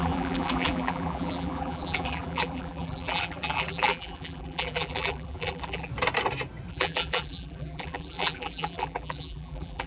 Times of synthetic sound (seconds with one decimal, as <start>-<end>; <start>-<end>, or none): 0.0-5.9; 6.7-9.9